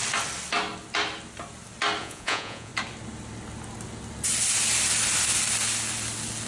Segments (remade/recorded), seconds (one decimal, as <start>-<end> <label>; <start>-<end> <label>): 0.0-2.0 recorded; 2.0-2.7 remade; 2.7-6.5 recorded